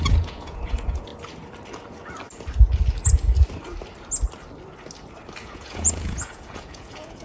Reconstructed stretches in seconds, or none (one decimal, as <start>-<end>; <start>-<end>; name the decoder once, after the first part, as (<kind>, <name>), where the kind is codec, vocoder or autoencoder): 0.0-1.1 (vocoder, Vocos); 5.4-7.2